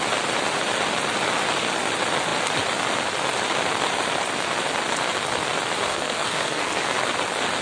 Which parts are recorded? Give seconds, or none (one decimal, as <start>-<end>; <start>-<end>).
0.0-5.9; 6.8-7.6